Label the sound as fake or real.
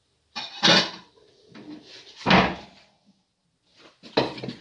real